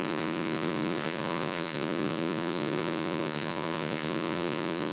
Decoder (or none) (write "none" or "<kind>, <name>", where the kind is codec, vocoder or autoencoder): vocoder, Vocos